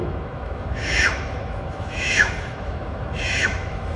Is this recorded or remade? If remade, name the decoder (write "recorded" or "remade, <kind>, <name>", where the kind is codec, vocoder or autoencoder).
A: remade, autoencoder, DAC-VAE